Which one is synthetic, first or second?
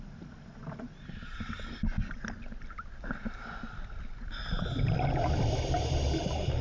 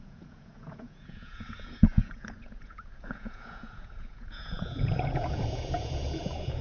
second